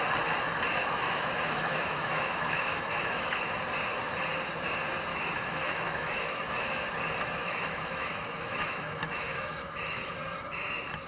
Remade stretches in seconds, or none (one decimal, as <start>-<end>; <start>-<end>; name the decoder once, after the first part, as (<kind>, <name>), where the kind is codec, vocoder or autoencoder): 0.8-3.6 (autoencoder, DAC-VAE); 5.1-6.9; 7.4-10.1